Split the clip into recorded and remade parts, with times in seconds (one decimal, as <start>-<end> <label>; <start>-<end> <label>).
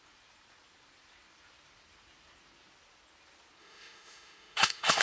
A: 0.0-3.6 recorded; 3.6-5.0 remade